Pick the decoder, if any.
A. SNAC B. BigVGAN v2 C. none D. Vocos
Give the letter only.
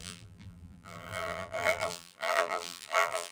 B